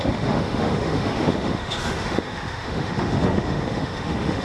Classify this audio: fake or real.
fake